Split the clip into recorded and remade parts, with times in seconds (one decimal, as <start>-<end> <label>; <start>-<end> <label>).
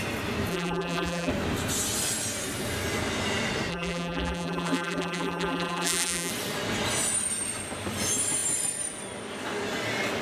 0.0-0.5 recorded; 0.5-1.3 remade; 1.3-3.7 recorded; 3.7-6.3 remade; 6.3-10.2 recorded